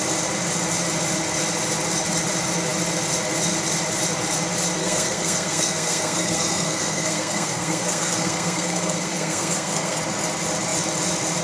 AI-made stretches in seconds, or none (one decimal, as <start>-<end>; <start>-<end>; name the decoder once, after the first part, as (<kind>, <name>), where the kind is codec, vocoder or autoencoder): 4.8-10.0 (codec, SNAC)